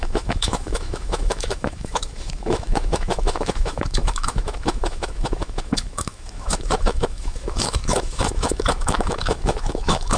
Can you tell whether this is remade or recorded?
remade